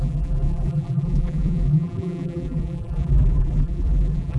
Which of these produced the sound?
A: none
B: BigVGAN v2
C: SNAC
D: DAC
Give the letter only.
B